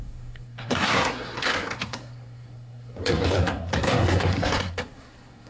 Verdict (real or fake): fake